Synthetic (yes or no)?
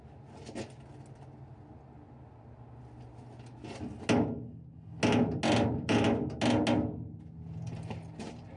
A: no